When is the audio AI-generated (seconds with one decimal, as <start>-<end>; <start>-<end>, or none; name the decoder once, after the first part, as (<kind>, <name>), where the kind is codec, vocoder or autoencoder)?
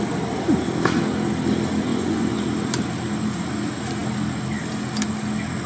1.9-2.4 (vocoder, Vocos)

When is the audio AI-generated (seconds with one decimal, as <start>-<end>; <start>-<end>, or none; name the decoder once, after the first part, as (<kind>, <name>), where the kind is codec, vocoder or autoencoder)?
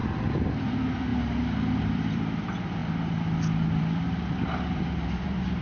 0.6-1.1 (vocoder, BigVGAN v2); 1.8-2.8; 3.8-5.6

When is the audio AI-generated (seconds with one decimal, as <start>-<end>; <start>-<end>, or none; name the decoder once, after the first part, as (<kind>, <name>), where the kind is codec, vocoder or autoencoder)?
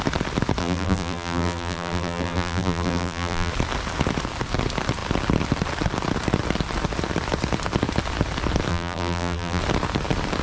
0.6-3.5 (vocoder, BigVGAN v2); 8.7-9.6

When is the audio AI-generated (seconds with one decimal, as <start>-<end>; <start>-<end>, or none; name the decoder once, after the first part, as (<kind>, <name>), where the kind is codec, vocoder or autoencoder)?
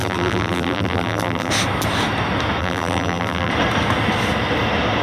0.0-1.5 (vocoder, BigVGAN v2); 2.6-3.5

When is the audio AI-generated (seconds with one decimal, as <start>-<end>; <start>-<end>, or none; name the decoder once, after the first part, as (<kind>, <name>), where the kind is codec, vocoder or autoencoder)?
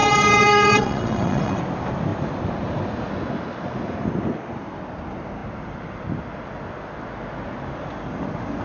0.0-1.6 (vocoder, WaveNeXt)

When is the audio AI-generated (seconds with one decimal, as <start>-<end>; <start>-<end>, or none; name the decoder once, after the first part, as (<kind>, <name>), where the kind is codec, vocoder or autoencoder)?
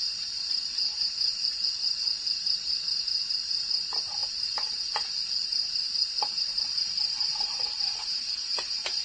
1.3-2.8 (vocoder, BigVGAN v2); 4.2-8.0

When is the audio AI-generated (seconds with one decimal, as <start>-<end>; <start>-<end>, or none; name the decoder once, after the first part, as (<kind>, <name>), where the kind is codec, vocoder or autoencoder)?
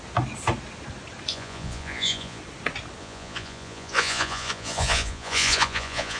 1.3-2.4 (vocoder, Vocos); 3.0-6.2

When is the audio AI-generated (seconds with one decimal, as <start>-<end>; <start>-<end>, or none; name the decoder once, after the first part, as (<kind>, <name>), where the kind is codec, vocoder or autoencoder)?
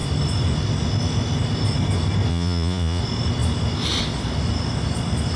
2.3-3.0 (vocoder, Vocos)